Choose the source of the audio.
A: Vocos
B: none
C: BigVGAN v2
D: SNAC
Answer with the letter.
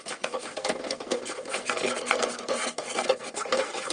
D